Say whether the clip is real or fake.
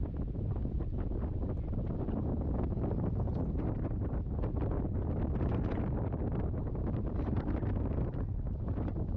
real